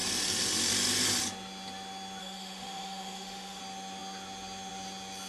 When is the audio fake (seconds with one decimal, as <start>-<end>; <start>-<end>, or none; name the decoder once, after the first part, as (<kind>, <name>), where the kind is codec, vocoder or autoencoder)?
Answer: 2.2-3.6 (autoencoder, DAC-VAE)